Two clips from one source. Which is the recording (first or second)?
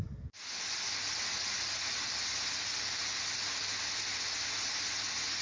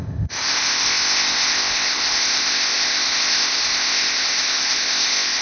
first